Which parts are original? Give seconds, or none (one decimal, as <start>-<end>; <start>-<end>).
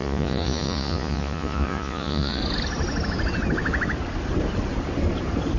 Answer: 2.4-5.6